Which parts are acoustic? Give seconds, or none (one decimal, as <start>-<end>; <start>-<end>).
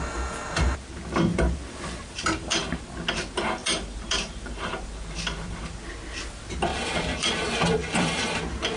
0.0-1.3; 2.8-3.6; 5.9-6.7; 8.4-8.8